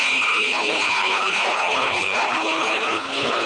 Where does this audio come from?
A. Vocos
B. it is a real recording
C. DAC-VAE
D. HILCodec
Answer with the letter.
D